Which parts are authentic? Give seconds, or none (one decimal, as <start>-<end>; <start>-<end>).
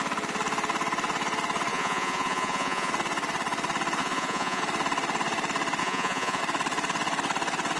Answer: 0.0-1.7; 2.9-4.0; 4.6-5.8; 6.4-7.8